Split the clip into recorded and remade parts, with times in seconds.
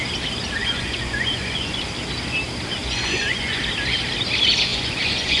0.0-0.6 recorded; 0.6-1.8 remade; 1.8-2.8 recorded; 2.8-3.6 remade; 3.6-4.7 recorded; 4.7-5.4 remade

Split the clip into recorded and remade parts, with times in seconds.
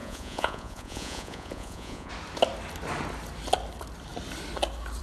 0.0-2.1 remade; 2.1-5.0 recorded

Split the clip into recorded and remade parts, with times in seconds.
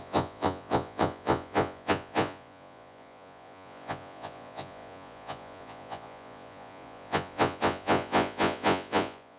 0.0-9.4 remade